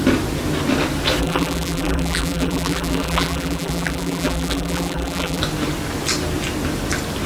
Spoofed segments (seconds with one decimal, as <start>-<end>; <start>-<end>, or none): 1.2-5.4